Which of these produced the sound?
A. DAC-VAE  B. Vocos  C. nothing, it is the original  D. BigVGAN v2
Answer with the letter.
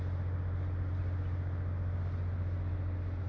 C